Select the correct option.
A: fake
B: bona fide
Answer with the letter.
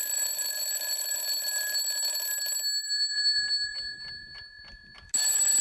B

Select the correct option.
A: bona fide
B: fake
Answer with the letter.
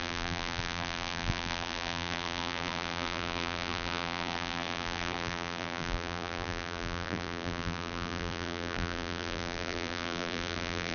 B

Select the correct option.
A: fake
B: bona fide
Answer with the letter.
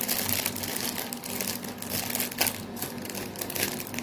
B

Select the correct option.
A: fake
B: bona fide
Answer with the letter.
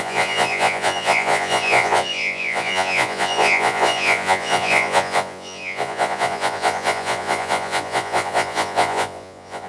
A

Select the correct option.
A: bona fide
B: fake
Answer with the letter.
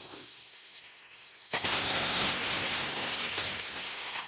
B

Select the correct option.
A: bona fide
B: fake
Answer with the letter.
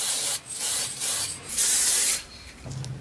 B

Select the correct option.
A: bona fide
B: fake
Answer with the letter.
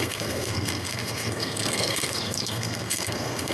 B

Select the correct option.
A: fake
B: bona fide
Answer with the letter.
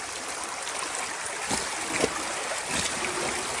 B